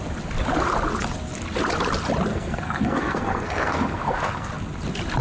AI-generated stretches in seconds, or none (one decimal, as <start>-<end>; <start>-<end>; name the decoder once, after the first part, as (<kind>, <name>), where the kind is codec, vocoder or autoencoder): 2.3-4.5 (codec, SNAC)